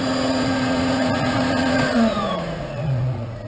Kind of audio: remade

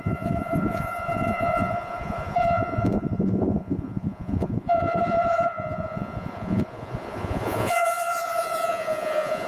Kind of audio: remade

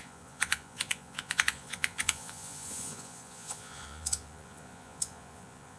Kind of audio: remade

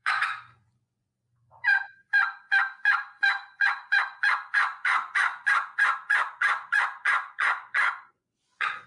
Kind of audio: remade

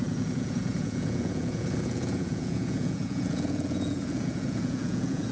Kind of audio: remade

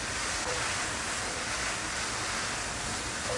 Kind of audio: recorded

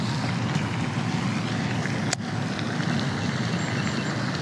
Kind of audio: recorded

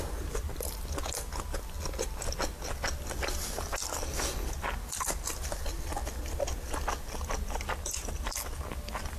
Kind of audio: recorded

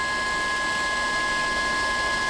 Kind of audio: recorded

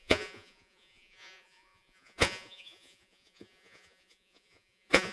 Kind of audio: remade